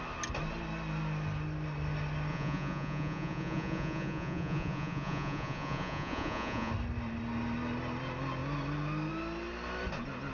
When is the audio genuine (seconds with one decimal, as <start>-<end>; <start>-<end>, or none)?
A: 0.0-2.3; 6.7-10.3